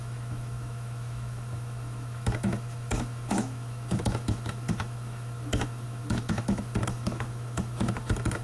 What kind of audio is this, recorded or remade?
remade